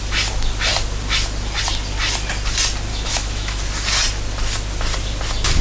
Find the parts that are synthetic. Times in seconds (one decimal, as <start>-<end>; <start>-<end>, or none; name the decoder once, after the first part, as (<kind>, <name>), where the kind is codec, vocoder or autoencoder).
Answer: 2.9-3.6 (autoencoder, DAC-VAE)